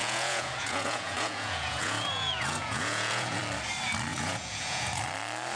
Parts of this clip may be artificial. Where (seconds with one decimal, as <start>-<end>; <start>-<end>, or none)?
0.0-3.4; 4.1-5.0